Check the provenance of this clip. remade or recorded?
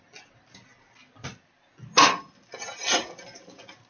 recorded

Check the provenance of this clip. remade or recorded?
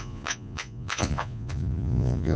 remade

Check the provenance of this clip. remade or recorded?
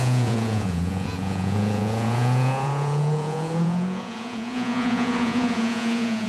remade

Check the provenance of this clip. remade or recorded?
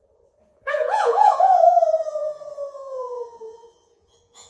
remade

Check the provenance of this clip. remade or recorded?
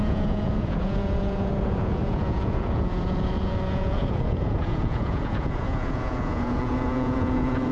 remade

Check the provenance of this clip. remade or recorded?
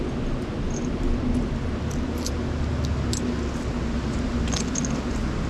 recorded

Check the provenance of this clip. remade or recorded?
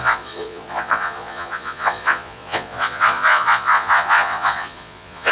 remade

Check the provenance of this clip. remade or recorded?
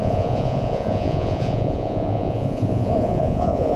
remade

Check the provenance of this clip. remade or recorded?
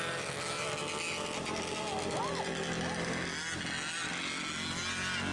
recorded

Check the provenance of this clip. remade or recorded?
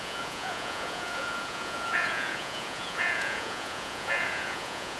remade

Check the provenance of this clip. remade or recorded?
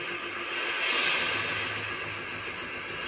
recorded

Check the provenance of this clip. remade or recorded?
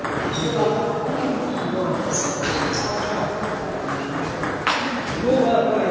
recorded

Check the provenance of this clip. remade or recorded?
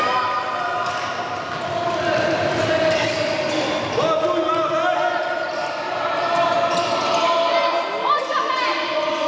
recorded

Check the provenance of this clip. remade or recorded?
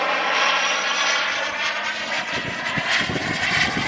recorded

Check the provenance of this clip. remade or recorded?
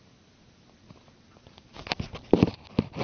recorded